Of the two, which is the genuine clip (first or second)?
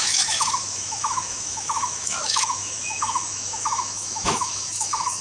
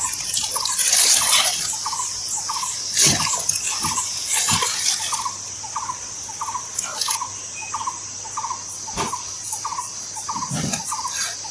second